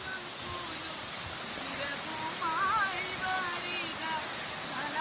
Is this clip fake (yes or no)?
no